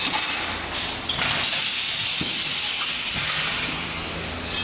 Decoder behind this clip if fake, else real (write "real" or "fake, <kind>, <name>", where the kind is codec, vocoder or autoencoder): real